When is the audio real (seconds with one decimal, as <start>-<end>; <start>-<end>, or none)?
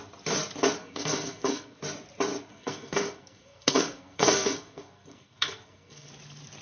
0.0-0.8; 1.8-2.5; 6.1-6.6